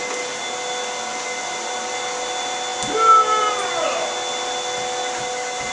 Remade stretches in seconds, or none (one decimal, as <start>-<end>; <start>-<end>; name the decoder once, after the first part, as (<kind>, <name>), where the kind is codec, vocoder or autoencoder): none